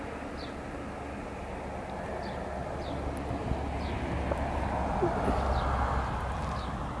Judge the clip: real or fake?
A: real